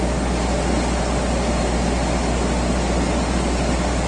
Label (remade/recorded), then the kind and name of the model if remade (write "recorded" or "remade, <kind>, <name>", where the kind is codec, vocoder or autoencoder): recorded